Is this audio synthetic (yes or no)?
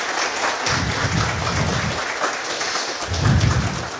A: no